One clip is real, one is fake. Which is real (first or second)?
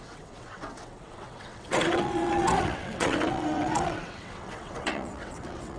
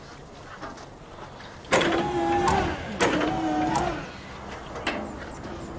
second